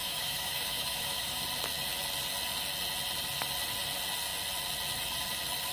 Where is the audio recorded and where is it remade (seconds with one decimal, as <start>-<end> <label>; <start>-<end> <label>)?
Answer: 0.0-1.4 remade; 1.4-5.7 recorded